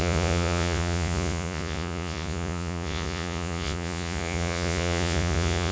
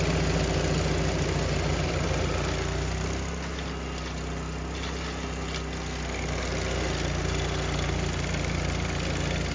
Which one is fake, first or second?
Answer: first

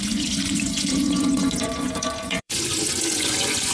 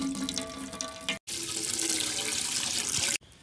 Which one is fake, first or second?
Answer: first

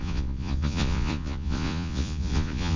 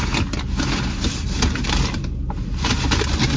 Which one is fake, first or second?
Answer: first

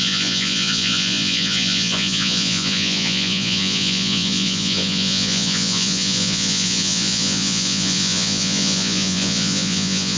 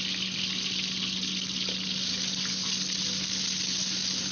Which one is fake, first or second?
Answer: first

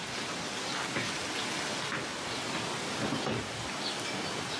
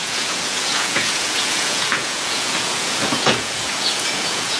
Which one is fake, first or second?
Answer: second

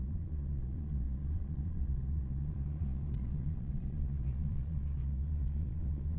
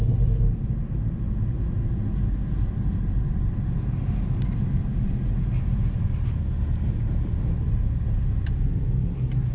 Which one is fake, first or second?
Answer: first